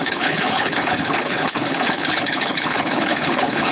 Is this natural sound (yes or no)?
no